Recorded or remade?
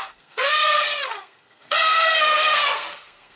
remade